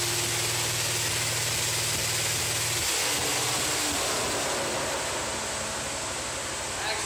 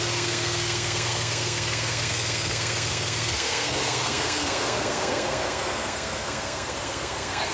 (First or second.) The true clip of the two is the first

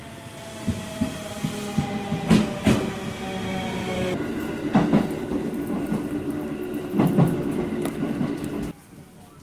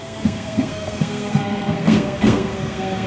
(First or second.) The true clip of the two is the first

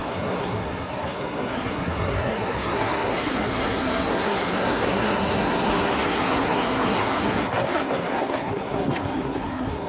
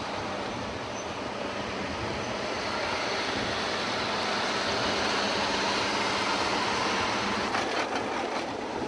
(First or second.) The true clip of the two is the second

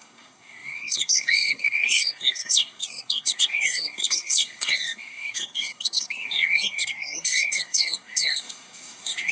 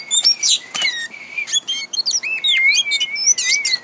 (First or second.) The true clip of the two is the second